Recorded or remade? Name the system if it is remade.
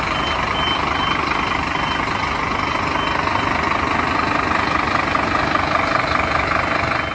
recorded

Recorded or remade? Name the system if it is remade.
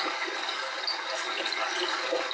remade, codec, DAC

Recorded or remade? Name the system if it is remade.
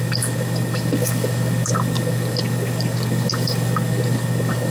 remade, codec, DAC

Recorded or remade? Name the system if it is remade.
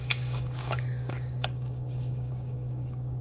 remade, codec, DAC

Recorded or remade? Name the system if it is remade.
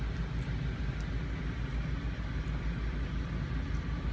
recorded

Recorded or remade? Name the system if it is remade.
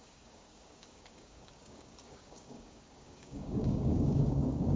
remade, codec, DAC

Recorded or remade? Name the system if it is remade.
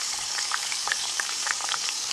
remade, codec, DAC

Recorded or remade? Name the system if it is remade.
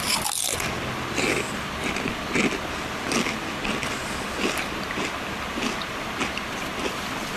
recorded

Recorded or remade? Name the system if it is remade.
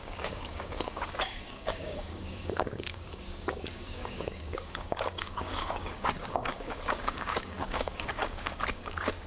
remade, codec, DAC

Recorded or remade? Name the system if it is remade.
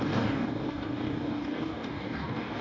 remade, codec, DAC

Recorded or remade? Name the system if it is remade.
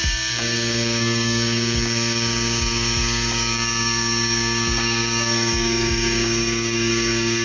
remade, codec, DAC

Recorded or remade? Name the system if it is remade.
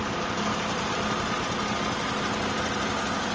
recorded